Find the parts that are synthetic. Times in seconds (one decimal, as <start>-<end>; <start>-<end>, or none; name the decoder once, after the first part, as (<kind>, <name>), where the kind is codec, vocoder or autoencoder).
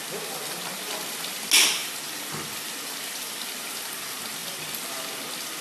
none